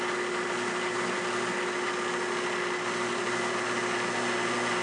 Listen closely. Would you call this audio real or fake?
real